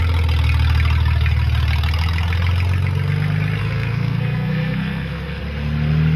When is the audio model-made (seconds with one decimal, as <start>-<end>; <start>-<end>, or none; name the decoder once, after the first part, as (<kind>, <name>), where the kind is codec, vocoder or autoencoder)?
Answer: 3.6-5.4 (codec, SNAC)